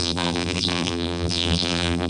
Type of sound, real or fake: fake